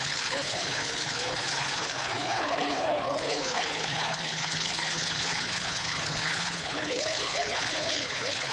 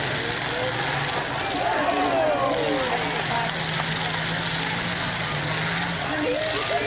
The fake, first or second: first